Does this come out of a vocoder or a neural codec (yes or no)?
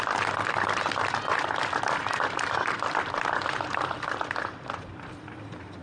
no